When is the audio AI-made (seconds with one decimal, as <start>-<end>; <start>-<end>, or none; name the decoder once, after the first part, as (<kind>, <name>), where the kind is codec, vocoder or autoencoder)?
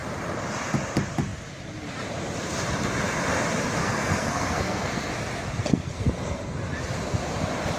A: 3.8-5.1 (codec, SNAC); 5.6-6.6